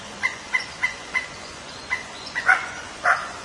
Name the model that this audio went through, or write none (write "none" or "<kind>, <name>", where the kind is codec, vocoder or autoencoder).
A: vocoder, Vocos